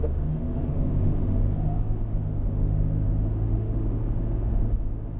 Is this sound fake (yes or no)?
yes